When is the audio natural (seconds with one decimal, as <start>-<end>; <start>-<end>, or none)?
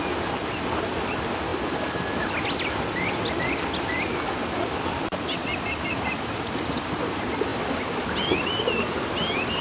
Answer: 0.0-9.6